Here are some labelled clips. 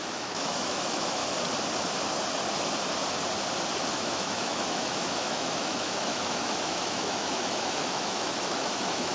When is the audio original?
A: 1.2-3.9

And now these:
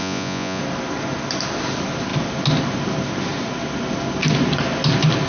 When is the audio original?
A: 0.6-5.3

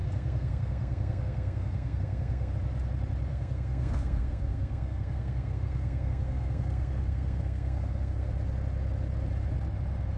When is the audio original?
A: 2.5-3.3; 8.3-10.2

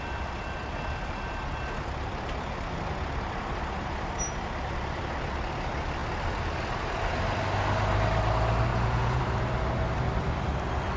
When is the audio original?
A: 0.0-8.7; 9.2-11.0

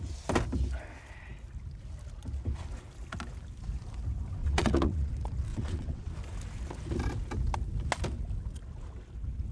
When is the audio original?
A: 0.0-4.4; 5.1-5.5; 6.1-9.5

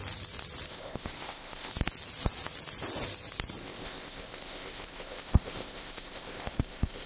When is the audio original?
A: 0.0-0.7; 1.7-3.6

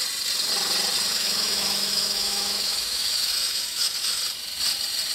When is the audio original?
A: 0.0-1.1; 4.2-5.1

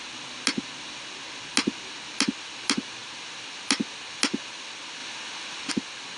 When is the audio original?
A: 0.0-6.2